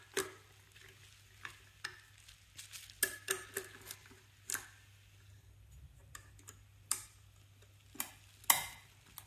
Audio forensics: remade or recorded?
recorded